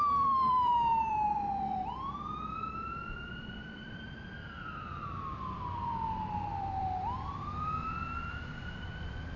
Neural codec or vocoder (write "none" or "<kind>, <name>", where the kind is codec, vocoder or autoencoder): vocoder, BigVGAN v2